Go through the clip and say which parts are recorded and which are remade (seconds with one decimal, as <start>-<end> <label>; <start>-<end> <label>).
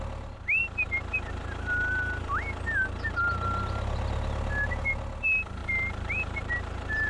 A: 0.0-5.6 recorded; 5.6-7.1 remade